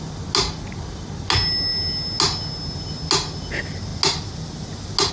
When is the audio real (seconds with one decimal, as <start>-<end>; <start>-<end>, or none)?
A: 0.0-5.1